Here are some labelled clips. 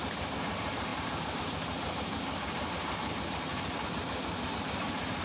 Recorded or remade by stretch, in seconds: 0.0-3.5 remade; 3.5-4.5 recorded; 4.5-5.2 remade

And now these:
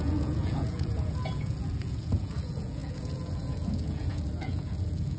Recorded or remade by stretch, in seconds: 0.0-5.2 remade

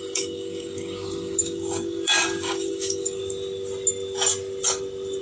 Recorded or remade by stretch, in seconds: 0.0-3.2 remade; 3.2-5.2 recorded

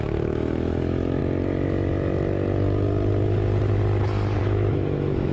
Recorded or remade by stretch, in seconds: 0.0-1.2 remade; 1.2-4.4 recorded; 4.4-5.3 remade

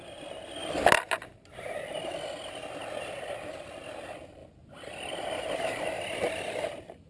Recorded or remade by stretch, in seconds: 0.0-4.4 recorded; 4.4-5.1 remade; 5.1-7.1 recorded